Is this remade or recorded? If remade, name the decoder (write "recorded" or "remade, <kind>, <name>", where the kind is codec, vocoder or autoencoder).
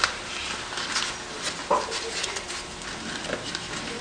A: recorded